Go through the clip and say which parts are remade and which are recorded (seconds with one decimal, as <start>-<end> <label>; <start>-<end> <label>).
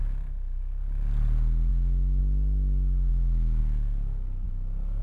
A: 0.0-1.7 recorded; 1.7-2.2 remade; 2.2-3.1 recorded; 3.1-3.6 remade; 3.6-5.0 recorded